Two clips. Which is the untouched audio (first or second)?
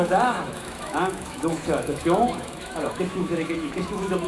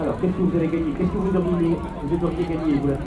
second